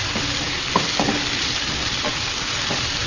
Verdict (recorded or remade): recorded